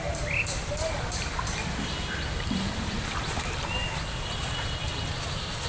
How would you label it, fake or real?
fake